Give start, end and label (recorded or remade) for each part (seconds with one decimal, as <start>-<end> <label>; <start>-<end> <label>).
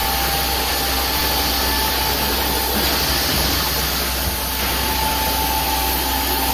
0.0-6.5 recorded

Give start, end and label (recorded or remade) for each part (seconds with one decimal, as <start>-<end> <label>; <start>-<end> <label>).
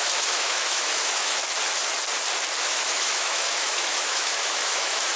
0.0-1.4 remade; 1.4-2.6 recorded; 2.6-5.2 remade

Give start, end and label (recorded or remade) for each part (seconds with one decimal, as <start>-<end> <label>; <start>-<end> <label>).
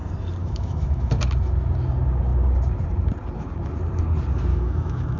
0.0-0.4 recorded; 0.4-1.1 remade; 1.1-4.5 recorded; 4.5-5.2 remade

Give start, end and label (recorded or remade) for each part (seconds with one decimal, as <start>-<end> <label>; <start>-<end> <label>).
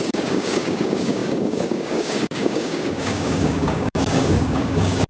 0.0-5.1 remade